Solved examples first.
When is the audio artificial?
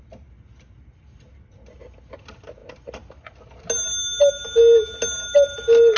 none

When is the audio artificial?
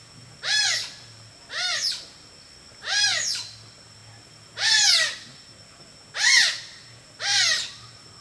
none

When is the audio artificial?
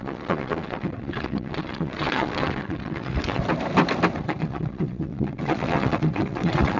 0.0-3.4; 4.2-6.8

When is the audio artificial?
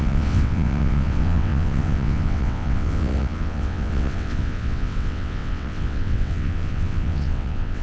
0.0-7.8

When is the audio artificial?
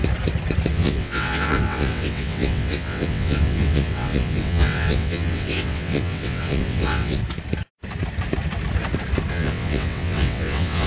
0.7-7.2; 9.3-10.9